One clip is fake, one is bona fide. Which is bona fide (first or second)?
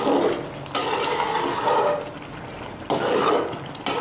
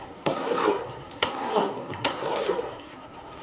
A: first